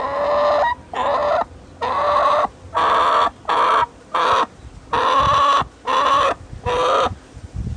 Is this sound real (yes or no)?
yes